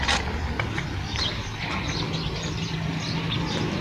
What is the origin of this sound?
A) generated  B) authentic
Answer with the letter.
B